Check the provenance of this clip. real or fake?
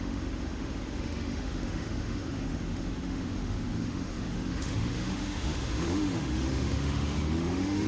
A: fake